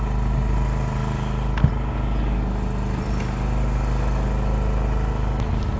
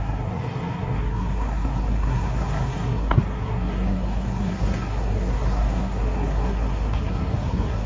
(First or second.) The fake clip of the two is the second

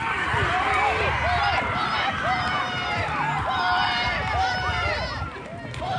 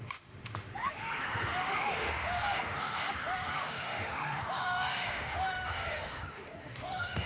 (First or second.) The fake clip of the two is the second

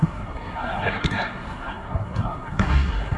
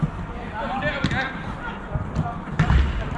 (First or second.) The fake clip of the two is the first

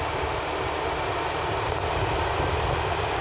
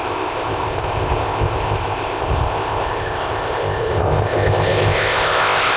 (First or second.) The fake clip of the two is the second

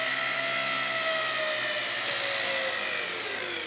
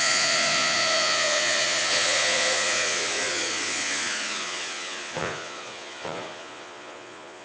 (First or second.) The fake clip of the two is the second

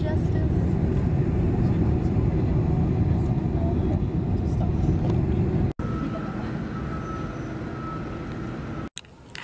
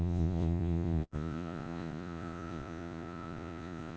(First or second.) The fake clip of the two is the second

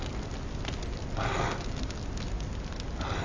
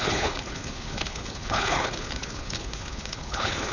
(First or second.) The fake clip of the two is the second